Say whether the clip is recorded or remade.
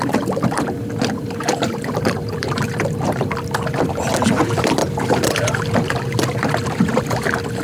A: remade